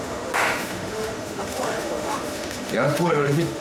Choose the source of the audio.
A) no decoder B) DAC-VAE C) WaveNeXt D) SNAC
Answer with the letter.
B